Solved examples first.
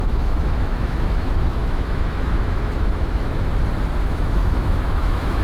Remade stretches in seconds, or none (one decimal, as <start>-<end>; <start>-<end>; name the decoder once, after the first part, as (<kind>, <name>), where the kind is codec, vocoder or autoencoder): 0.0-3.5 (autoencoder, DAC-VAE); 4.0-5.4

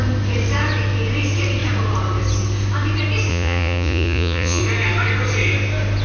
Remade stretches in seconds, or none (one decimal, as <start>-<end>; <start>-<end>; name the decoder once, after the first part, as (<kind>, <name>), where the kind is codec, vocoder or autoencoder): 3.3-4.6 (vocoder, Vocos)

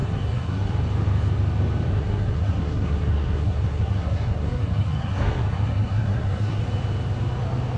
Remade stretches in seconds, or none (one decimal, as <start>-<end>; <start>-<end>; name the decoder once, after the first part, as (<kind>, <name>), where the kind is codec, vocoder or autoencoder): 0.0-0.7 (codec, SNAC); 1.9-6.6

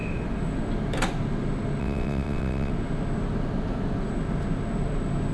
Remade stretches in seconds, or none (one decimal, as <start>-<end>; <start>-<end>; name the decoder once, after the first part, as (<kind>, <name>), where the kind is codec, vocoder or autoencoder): 1.8-2.7 (vocoder, WaveNeXt)

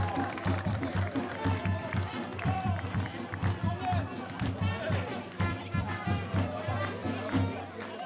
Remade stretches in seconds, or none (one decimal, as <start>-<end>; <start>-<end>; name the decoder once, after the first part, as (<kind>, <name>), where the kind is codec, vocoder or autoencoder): 0.0-7.0 (vocoder, BigVGAN v2)

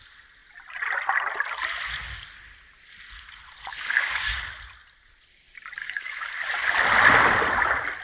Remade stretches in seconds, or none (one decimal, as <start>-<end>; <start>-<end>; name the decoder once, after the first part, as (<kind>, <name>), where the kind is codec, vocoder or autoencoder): 3.7-4.4 (codec, DAC); 5.8-6.4

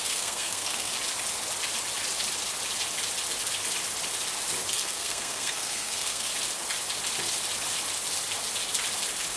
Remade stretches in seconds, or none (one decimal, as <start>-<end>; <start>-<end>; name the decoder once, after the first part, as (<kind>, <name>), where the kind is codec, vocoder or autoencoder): 0.0-0.9 (codec, SNAC); 4.7-6.3

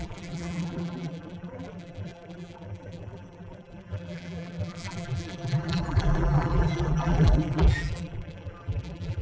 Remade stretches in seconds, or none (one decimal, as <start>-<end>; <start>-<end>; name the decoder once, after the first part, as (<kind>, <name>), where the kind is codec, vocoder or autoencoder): 0.0-9.2 (vocoder, BigVGAN v2)